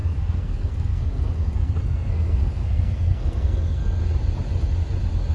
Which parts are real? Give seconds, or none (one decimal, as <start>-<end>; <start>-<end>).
4.0-5.3